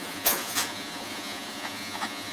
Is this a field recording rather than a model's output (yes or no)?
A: no